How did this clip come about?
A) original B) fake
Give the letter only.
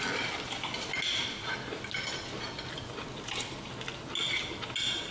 A